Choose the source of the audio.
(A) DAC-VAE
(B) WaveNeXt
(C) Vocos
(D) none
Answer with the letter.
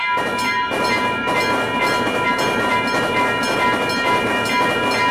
D